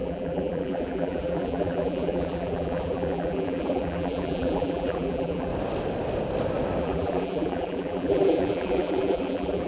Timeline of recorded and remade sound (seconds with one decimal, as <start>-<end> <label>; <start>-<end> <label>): 0.0-5.5 remade; 5.5-6.8 recorded; 6.8-9.7 remade